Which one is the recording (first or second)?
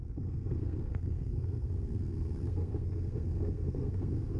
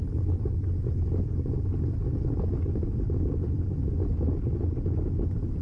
second